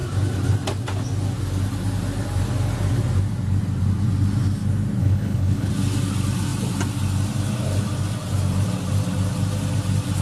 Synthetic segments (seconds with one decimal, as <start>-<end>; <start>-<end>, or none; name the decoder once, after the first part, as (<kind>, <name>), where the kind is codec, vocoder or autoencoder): 5.0-5.7 (codec, HILCodec)